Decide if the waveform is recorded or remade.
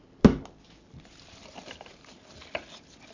recorded